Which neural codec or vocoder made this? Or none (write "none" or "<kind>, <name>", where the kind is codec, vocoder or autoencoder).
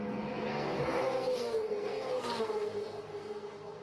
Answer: codec, SNAC